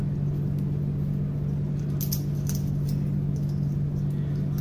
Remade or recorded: recorded